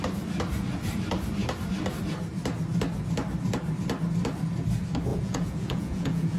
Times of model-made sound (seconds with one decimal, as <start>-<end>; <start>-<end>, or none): 5.1-6.4